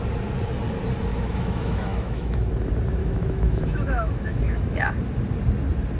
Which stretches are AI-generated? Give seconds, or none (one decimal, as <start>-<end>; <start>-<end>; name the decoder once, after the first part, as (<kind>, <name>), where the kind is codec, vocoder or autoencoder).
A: 1.1-2.5 (autoencoder, DAC-VAE); 3.0-4.9